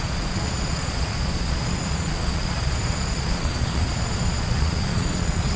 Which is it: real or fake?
fake